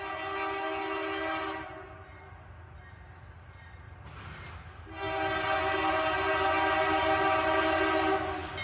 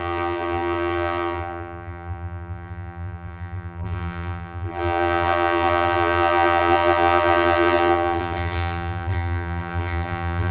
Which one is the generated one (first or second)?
second